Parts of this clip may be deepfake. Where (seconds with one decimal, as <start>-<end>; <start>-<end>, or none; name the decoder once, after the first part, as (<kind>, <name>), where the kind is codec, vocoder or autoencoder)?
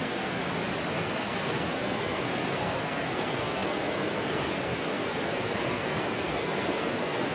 0.0-0.4 (codec, SNAC); 0.9-7.3